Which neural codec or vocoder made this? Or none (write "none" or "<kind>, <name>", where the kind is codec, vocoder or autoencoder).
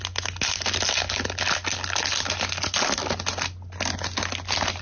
none